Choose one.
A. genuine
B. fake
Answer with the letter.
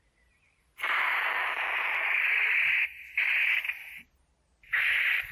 A